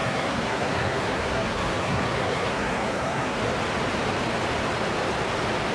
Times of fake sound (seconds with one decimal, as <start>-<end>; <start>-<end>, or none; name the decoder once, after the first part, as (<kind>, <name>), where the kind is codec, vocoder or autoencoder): 0.0-3.4 (codec, SNAC)